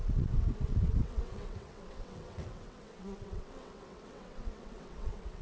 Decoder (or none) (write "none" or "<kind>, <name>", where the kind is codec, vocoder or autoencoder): vocoder, WaveNeXt